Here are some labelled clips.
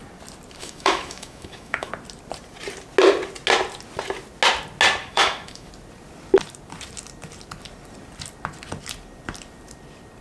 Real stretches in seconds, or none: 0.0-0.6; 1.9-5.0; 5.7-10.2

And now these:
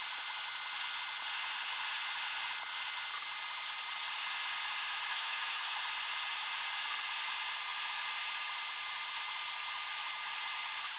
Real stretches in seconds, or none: 0.0-5.1; 5.8-11.0

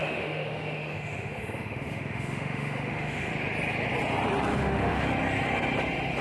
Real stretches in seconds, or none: 3.3-4.5; 5.0-6.2

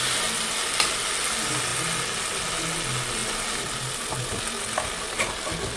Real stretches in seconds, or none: 0.0-5.8